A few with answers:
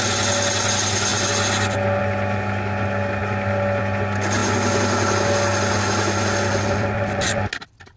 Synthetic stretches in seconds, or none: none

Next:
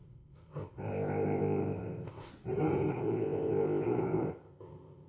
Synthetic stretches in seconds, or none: 0.0-2.3 (codec, ZipCodec); 2.9-5.1

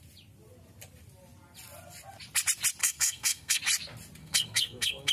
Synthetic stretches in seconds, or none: 2.8-3.6 (codec, SNAC); 4.2-5.1

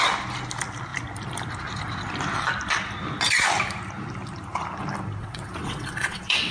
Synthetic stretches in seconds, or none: 5.2-6.5 (vocoder, WaveNeXt)

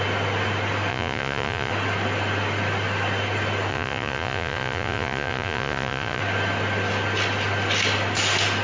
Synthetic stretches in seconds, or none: 0.9-1.7 (vocoder, Vocos); 3.7-6.2

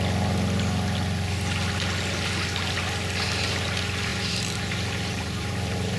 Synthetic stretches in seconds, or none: 4.1-6.0 (vocoder, BigVGAN v2)

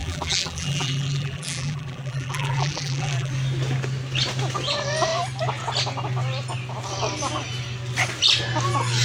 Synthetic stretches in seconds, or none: 0.0-3.3 (vocoder, BigVGAN v2)

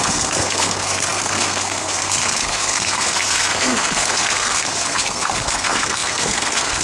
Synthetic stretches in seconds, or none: 0.0-6.8 (codec, SNAC)